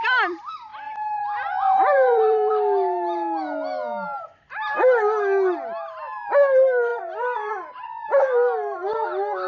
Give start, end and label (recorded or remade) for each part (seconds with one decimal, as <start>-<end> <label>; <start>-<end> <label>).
0.0-0.7 recorded; 0.7-2.5 remade; 2.5-6.9 recorded; 6.9-7.5 remade; 7.5-9.5 recorded